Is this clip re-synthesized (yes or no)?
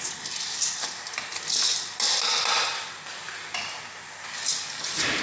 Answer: no